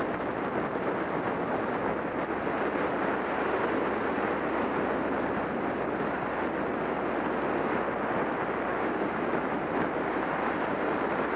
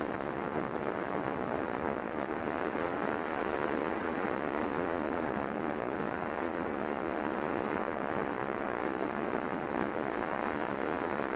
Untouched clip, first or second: first